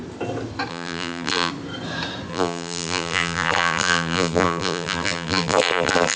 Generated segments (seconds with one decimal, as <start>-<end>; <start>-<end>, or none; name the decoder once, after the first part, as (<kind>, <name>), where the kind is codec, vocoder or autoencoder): 0.7-1.5 (vocoder, BigVGAN v2); 2.3-6.2